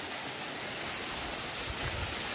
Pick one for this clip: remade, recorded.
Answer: recorded